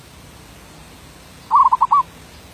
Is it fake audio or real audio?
real